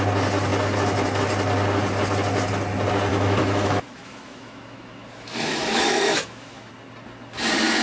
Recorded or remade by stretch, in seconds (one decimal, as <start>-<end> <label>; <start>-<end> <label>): 0.0-3.1 recorded; 3.1-6.7 remade; 6.7-7.8 recorded